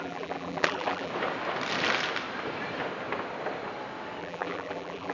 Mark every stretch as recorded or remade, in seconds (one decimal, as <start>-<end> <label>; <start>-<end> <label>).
0.0-1.1 remade; 1.1-4.2 recorded; 4.2-5.1 remade